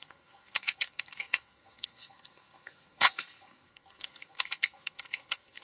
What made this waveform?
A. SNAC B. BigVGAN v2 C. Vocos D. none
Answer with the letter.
A